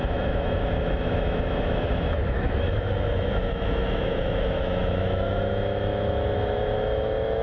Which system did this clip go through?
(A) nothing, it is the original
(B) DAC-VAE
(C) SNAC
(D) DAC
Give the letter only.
B